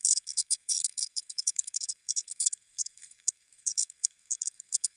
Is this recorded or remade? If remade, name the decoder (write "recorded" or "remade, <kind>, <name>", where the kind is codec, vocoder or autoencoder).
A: remade, codec, SNAC